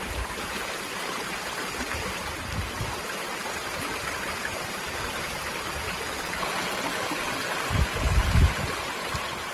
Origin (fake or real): fake